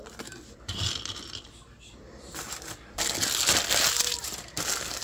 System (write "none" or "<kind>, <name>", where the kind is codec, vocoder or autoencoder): none